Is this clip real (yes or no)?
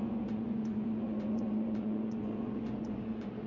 no